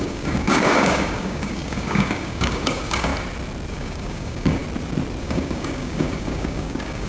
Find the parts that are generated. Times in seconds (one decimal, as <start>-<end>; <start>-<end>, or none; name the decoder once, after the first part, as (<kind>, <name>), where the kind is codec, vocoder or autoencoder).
0.0-3.1 (codec, DAC); 3.7-4.6; 5.2-7.1